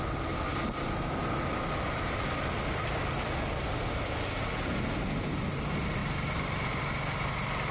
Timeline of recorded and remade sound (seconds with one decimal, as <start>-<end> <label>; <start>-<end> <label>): 0.0-7.7 recorded